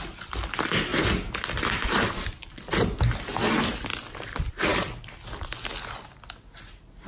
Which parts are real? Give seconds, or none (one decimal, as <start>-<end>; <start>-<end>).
0.0-7.1